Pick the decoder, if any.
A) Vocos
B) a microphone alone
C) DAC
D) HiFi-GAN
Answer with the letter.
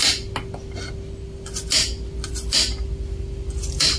B